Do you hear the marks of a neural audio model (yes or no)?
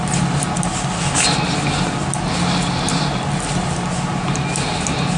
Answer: no